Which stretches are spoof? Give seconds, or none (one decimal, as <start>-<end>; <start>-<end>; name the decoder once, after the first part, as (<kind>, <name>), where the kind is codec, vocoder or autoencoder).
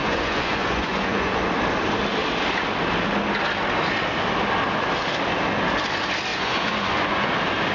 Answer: 0.0-1.5 (vocoder, Vocos); 6.3-7.3